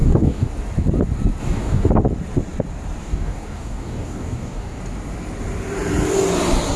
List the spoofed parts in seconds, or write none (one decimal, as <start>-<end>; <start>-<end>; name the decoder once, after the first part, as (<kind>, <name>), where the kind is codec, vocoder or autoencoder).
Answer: 0.0-0.5 (codec, DAC); 1.4-1.9; 3.0-4.8